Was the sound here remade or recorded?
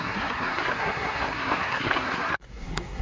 remade